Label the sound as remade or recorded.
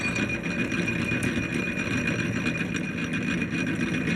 recorded